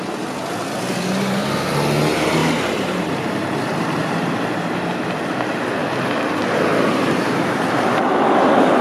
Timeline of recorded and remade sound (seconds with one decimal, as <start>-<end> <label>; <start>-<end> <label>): 0.0-2.4 recorded; 2.4-3.1 remade; 3.1-3.7 recorded; 3.7-4.9 remade; 4.9-8.8 recorded